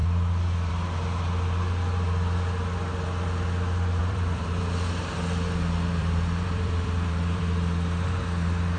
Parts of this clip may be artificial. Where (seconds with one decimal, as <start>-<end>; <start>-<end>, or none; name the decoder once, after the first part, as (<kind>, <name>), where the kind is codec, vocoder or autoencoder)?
4.0-4.6 (vocoder, BigVGAN v2); 6.0-7.4